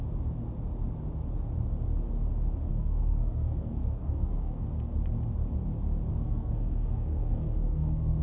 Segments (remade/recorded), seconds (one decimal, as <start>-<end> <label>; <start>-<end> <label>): 0.0-2.7 recorded; 2.7-4.7 remade; 4.7-6.1 recorded; 6.1-8.2 remade